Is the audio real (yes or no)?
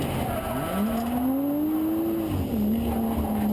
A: yes